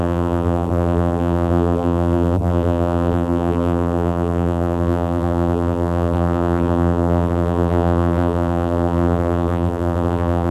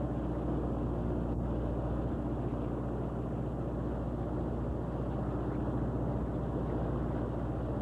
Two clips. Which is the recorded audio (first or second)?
second